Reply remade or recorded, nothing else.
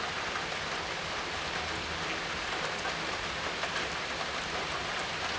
recorded